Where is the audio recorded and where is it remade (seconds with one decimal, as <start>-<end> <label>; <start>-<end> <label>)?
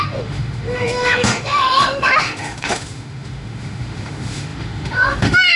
0.0-5.6 remade